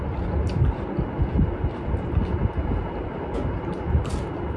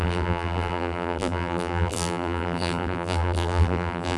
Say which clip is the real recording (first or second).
first